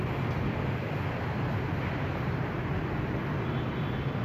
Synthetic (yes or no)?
no